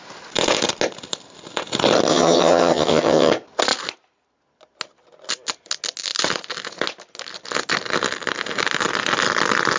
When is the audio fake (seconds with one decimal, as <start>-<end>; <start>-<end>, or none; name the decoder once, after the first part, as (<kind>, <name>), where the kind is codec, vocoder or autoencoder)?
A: 2.1-3.3 (vocoder, HiFi-GAN)